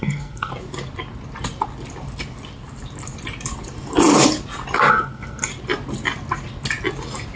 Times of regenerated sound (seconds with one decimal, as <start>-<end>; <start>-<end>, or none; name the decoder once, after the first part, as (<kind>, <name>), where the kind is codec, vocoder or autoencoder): 0.0-0.5 (codec, SNAC); 4.9-5.5